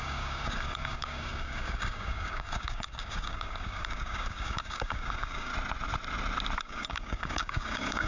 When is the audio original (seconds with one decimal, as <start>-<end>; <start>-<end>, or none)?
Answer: 5.5-6.6